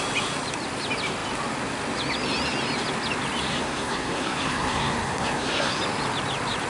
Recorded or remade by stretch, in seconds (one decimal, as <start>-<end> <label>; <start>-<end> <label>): 0.0-3.5 recorded; 3.5-5.8 remade; 5.8-6.7 recorded